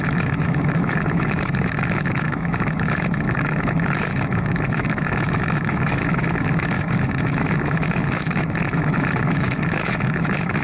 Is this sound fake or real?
fake